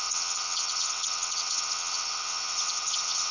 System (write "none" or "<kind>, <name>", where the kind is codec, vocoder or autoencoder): vocoder, HiFi-GAN